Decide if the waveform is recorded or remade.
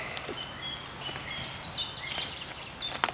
recorded